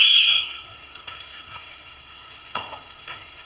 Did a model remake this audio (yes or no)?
yes